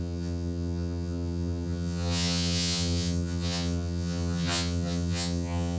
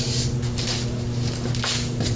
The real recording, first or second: second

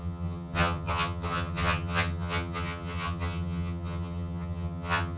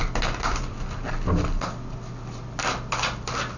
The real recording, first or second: second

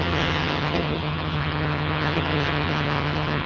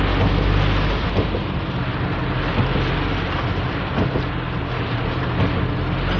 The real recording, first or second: second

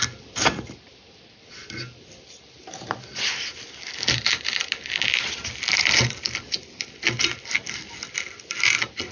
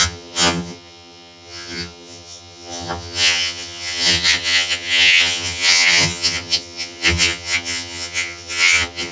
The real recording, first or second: first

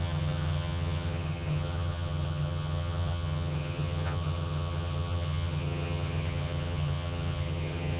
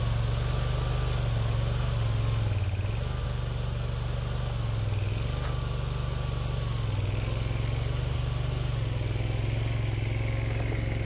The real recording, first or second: second